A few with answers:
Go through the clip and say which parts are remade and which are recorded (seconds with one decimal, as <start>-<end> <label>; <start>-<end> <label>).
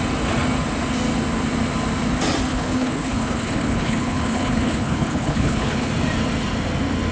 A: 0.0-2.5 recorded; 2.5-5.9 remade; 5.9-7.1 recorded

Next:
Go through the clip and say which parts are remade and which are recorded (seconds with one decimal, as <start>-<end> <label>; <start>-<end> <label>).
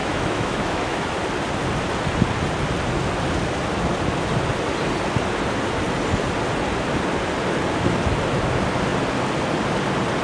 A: 0.0-1.1 remade; 1.1-10.2 recorded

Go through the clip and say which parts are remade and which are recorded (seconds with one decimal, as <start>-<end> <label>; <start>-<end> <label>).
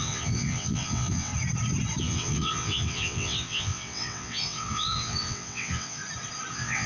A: 0.0-1.3 remade; 1.3-2.0 recorded; 2.0-6.0 remade; 6.0-6.5 recorded; 6.5-6.9 remade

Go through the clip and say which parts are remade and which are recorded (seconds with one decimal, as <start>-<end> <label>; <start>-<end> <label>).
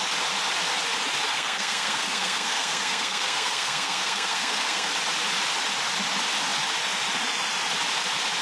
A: 0.0-1.3 recorded; 1.3-4.9 remade; 4.9-8.4 recorded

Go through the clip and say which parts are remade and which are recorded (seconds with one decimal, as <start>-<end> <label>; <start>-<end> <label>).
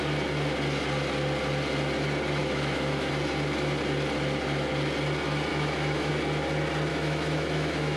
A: 0.0-2.4 recorded; 2.4-3.1 remade; 3.1-5.5 recorded; 5.5-6.1 remade; 6.1-6.9 recorded; 6.9-8.0 remade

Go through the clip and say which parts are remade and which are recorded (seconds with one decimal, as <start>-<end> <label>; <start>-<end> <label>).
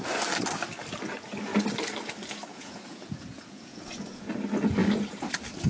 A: 0.0-2.5 recorded; 2.5-4.3 remade; 4.3-4.8 recorded; 4.8-5.3 remade; 5.3-5.7 recorded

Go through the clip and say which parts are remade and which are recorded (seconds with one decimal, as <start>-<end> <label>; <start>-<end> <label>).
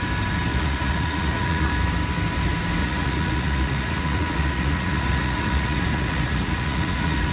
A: 0.0-0.5 recorded; 0.5-1.7 remade; 1.7-2.8 recorded; 2.8-7.3 remade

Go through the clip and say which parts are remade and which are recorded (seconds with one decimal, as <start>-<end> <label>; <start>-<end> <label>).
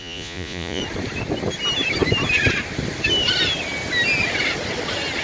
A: 0.0-0.8 remade; 0.8-5.2 recorded